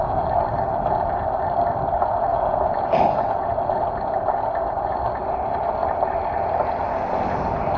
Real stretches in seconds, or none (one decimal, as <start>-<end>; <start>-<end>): 0.0-2.3; 3.6-7.8